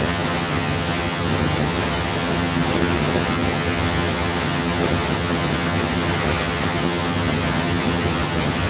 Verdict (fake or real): fake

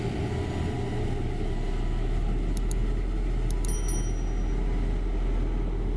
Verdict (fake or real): real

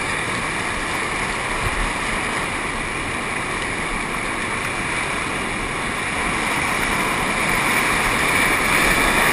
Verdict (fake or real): real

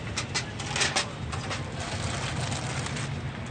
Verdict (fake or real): real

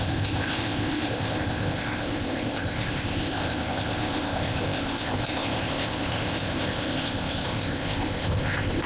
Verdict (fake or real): fake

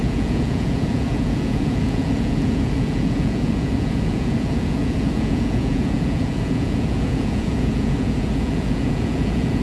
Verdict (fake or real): fake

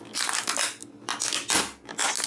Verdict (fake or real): real